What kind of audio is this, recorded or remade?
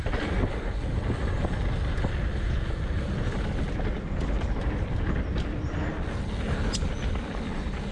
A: recorded